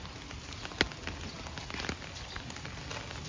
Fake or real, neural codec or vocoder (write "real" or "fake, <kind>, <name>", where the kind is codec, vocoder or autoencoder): real